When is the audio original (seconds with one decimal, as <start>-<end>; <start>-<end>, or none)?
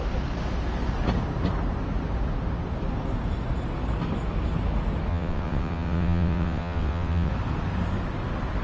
0.0-5.1; 7.3-8.6